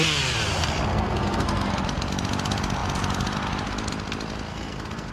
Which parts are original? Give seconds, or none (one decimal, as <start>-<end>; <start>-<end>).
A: 0.0-0.9; 1.7-4.5